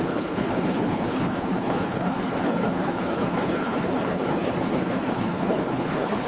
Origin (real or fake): fake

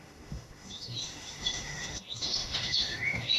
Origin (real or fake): fake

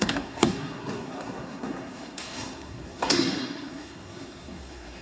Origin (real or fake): fake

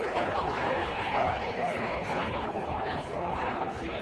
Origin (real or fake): fake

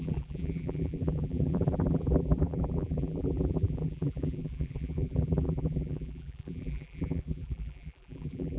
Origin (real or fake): fake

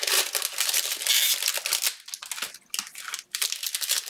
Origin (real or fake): real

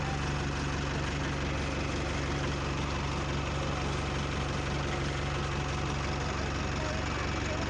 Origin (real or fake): real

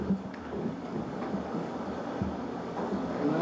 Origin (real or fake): fake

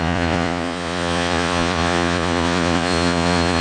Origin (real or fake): fake